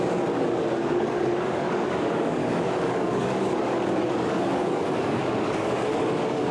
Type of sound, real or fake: fake